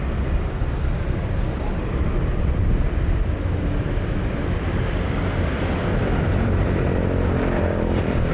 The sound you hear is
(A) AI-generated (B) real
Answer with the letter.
A